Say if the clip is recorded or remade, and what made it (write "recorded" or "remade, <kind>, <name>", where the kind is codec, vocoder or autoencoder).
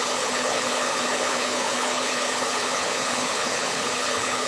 remade, codec, HILCodec